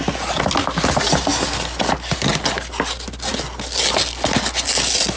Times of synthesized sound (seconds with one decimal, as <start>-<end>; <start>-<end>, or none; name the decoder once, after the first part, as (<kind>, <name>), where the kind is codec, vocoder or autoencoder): none